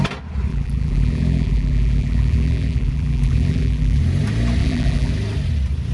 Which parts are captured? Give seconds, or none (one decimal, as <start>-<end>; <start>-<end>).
0.0-0.5; 4.0-4.6; 5.1-5.9